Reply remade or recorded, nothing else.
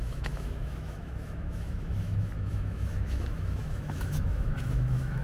remade